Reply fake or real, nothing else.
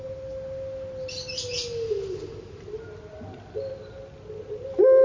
real